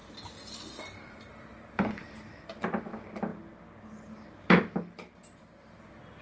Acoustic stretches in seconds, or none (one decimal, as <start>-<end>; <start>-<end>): 0.0-6.2